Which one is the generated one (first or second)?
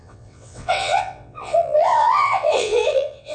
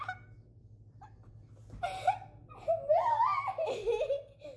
first